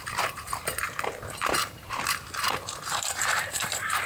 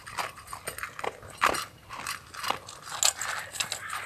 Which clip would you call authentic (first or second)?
second